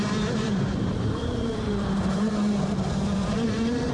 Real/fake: fake